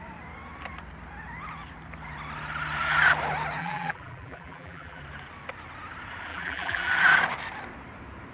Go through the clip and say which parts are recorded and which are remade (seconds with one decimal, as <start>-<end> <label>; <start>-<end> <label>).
0.0-3.6 recorded; 3.6-5.0 remade; 5.0-6.3 recorded; 6.3-6.9 remade; 6.9-8.3 recorded